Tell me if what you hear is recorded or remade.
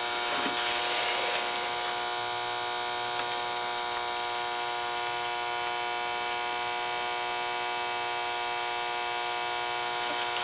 recorded